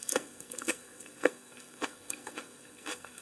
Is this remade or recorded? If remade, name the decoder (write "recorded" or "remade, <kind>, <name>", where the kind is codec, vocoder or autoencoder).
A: remade, codec, SNAC